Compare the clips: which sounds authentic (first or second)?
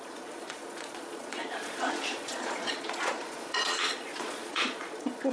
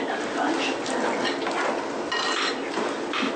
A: second